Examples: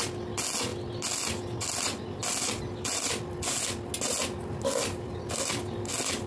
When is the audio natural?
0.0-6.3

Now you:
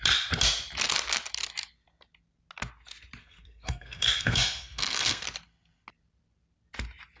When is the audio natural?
0.0-3.2; 5.2-7.2

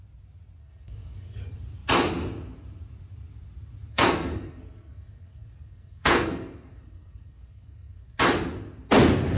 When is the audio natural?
0.0-0.6; 1.4-3.9; 8.2-9.4

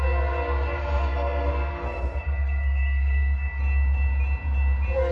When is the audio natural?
0.0-0.8; 3.6-5.1

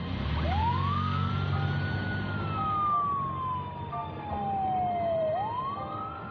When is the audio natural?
0.0-0.6; 1.3-6.3

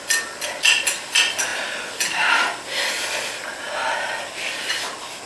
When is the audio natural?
0.0-5.3

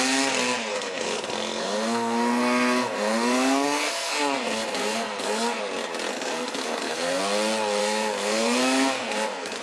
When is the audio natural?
0.0-0.7; 5.6-6.1; 7.2-7.8